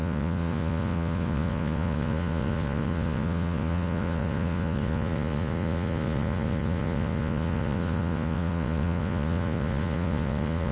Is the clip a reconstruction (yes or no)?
yes